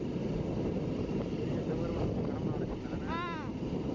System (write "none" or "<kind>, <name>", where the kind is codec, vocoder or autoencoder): none